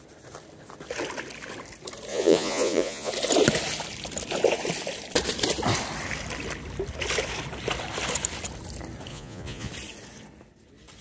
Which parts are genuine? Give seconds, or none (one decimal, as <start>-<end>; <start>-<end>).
0.0-2.1; 3.1-9.1; 9.7-11.0